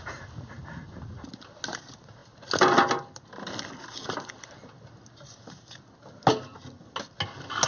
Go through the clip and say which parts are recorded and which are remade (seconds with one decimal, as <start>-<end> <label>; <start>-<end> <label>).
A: 0.0-7.7 recorded